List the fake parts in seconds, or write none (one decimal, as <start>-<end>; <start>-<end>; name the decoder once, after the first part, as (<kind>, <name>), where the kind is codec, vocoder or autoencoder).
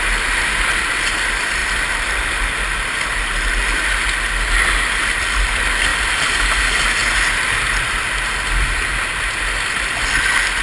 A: 1.6-2.9 (vocoder, BigVGAN v2); 5.9-6.4